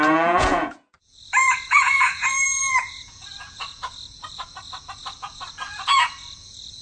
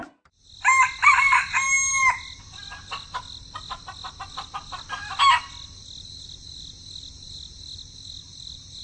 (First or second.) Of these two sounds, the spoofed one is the first